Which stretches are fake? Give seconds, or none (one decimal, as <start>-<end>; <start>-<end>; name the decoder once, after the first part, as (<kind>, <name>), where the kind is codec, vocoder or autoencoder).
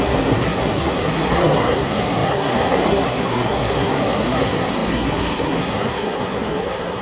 0.0-7.0 (codec, SNAC)